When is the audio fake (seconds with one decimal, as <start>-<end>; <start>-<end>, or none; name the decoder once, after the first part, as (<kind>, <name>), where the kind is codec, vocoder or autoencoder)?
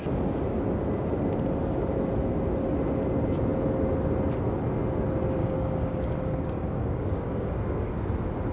5.4-7.9 (codec, DAC)